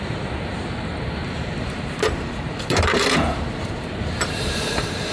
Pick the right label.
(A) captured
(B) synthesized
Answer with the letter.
B